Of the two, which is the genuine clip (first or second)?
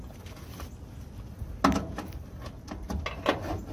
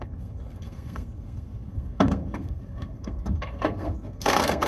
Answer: first